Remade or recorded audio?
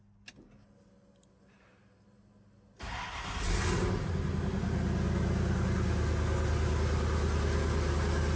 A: recorded